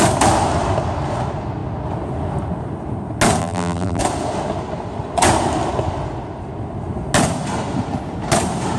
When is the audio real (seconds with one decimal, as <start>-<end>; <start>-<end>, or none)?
0.0-3.4; 4.0-8.8